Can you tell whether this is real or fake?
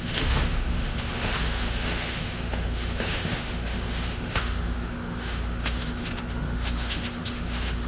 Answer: fake